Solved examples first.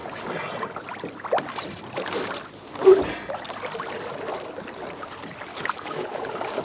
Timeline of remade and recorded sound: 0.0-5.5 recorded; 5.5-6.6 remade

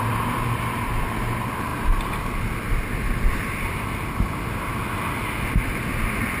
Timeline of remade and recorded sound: 0.0-6.4 recorded

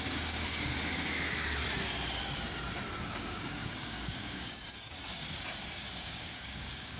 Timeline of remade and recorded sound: 0.0-0.7 remade; 0.7-3.0 recorded; 3.0-7.0 remade

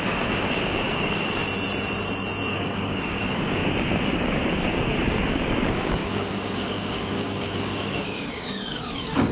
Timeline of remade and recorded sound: 0.0-1.4 remade; 1.4-2.5 recorded; 2.5-9.3 remade

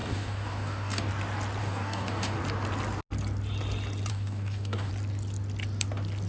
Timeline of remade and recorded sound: 0.0-1.1 remade; 1.1-1.6 recorded; 1.6-2.4 remade; 2.4-4.1 recorded; 4.1-4.9 remade; 4.9-6.3 recorded

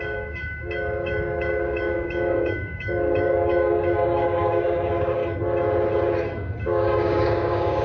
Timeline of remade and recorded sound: 0.0-5.2 remade; 5.2-6.6 recorded; 6.6-7.8 remade